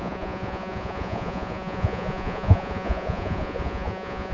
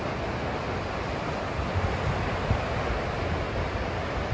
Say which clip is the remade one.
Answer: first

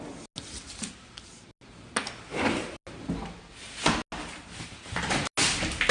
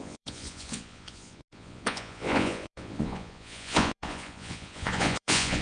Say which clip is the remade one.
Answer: second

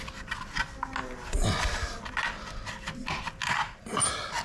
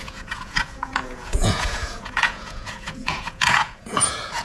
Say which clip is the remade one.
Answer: second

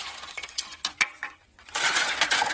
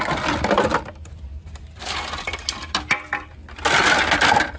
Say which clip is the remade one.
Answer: first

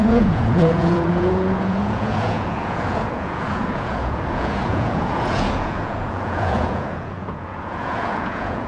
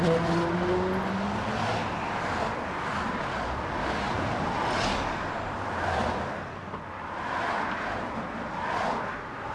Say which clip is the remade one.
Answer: first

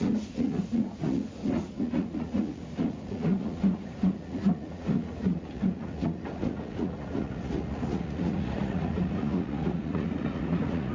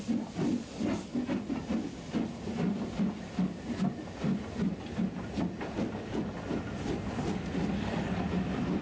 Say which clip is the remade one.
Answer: first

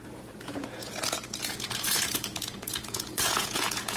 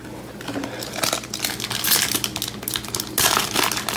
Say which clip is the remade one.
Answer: first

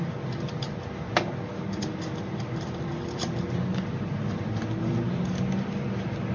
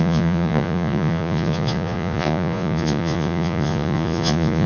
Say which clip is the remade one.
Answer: second